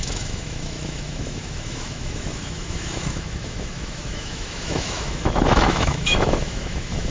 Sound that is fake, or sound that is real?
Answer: fake